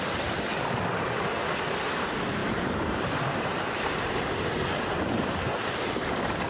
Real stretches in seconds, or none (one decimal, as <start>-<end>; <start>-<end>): 0.0-6.5